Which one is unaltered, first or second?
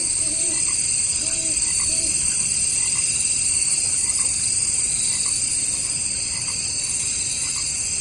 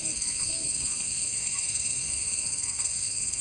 first